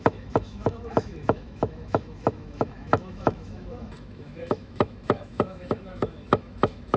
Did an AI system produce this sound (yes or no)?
yes